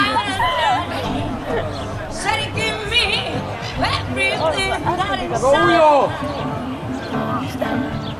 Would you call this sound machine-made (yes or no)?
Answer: no